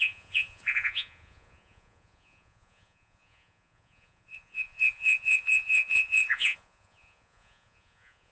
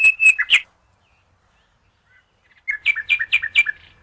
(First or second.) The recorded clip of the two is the second